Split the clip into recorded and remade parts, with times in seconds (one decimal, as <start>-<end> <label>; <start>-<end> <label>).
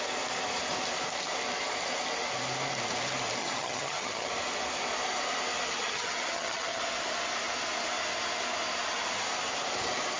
0.0-3.4 recorded; 3.4-4.3 remade; 4.3-5.8 recorded; 5.8-6.8 remade; 6.8-10.2 recorded